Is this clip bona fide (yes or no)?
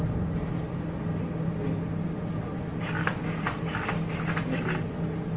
yes